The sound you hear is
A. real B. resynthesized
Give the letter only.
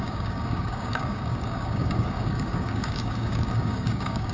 B